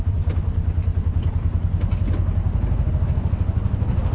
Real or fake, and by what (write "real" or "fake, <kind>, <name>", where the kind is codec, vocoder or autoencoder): real